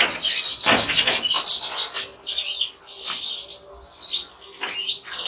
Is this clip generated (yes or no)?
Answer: no